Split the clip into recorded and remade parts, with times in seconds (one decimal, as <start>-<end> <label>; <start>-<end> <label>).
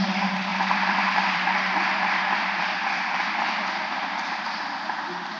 0.0-0.5 recorded; 0.5-3.7 remade; 3.7-5.4 recorded